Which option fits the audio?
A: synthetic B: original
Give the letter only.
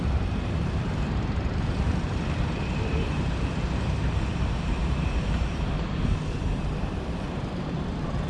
A